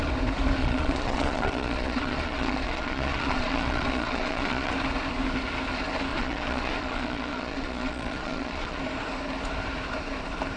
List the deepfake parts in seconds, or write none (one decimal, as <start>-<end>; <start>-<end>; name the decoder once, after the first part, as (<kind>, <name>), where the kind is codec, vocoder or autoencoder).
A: 0.6-4.7 (vocoder, Vocos); 6.1-8.8